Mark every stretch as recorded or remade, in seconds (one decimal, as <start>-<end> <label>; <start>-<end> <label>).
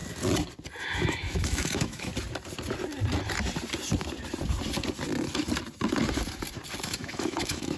0.0-0.8 recorded; 0.8-2.1 remade; 2.1-6.8 recorded; 6.8-7.8 remade